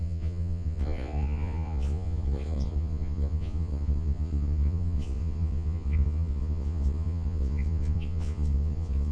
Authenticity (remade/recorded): remade